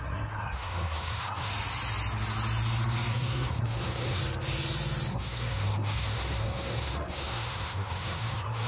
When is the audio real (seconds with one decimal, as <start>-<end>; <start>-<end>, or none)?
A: 1.5-3.1; 4.2-5.1